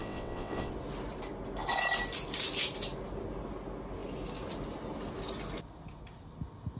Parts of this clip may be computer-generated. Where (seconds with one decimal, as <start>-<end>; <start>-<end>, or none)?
0.0-0.7